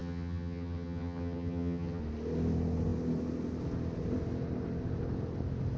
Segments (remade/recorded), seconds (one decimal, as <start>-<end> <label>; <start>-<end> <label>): 0.0-2.0 remade; 2.0-5.8 recorded